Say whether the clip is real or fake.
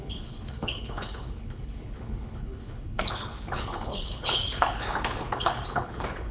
fake